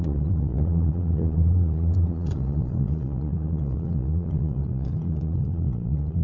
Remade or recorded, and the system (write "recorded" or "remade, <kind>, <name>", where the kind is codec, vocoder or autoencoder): remade, vocoder, Vocos